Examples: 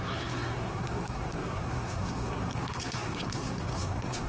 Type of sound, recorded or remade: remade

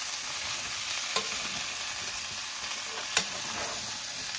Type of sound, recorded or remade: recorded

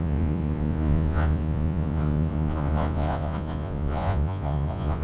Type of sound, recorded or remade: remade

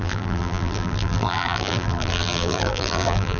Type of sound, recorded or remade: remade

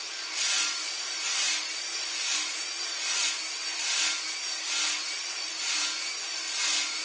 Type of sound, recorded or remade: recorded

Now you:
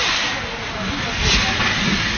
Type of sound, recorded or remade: recorded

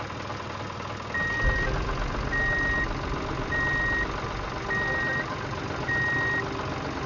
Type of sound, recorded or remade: recorded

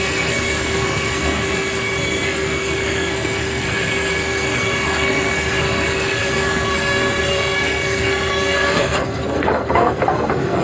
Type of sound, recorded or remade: remade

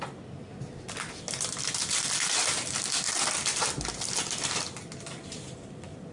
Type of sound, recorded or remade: recorded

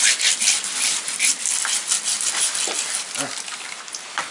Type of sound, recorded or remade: recorded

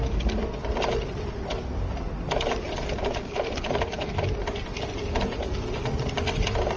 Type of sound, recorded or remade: recorded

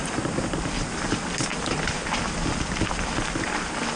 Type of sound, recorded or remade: recorded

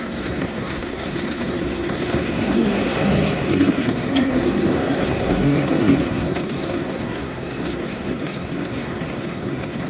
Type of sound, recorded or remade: remade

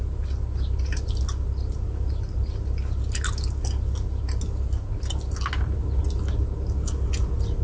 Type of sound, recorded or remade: recorded